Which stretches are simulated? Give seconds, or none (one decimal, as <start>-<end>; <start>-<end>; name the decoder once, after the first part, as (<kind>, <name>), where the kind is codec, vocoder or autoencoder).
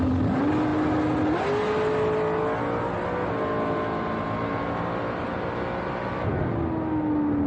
none